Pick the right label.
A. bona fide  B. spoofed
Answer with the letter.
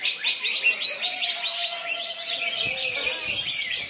A